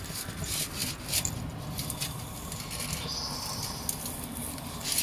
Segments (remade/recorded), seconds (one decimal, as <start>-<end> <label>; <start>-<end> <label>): 0.0-5.0 recorded